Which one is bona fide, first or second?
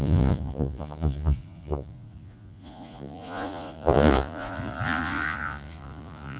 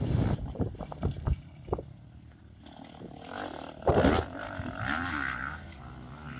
second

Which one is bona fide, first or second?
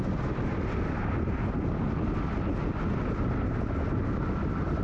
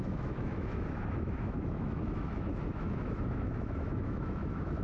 first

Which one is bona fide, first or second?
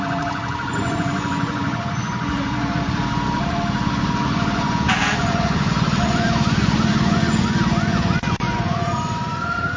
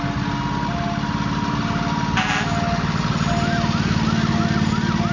second